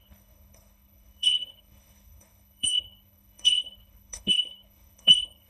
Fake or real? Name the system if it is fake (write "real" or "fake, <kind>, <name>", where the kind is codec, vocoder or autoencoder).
fake, codec, HILCodec